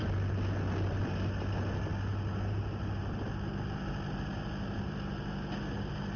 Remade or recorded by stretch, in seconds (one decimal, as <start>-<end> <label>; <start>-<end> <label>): 0.0-6.2 recorded